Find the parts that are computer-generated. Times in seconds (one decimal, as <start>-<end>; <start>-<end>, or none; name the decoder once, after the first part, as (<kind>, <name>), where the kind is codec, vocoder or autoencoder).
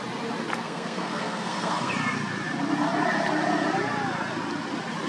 0.5-1.9 (codec, SNAC)